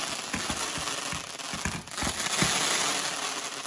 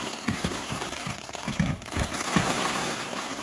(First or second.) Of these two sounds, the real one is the first